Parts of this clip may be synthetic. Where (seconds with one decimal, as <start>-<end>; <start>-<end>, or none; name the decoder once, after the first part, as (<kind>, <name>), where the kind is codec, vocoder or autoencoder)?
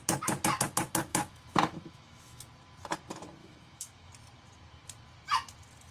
1.1-2.4 (autoencoder, DAC-VAE); 3.4-4.1